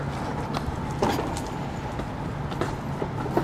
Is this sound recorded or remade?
recorded